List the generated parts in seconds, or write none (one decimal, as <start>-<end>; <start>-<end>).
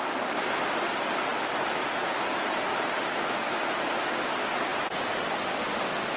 none